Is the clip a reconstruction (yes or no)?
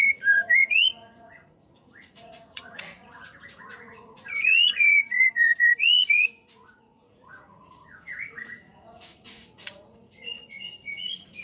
yes